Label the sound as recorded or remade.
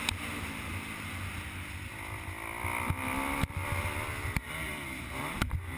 recorded